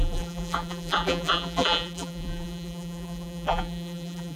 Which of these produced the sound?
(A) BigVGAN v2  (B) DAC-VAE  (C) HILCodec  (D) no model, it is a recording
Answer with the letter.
A